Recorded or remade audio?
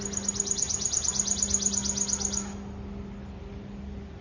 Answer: recorded